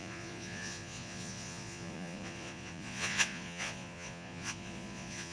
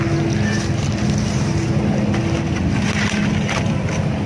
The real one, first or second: second